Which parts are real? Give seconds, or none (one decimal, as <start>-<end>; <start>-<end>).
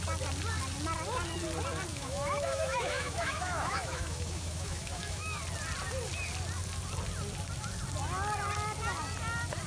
0.0-1.9; 5.4-9.7